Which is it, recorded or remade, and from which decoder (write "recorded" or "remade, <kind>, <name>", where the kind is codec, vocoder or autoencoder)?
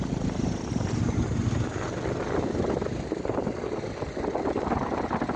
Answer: recorded